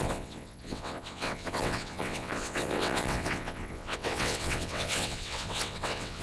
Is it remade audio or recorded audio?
remade